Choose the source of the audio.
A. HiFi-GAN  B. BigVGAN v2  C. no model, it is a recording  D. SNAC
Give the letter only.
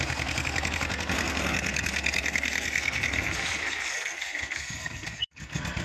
D